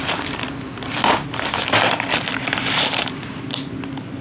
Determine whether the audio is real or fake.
fake